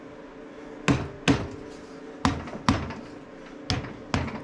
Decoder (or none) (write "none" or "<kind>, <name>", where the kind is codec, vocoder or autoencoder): none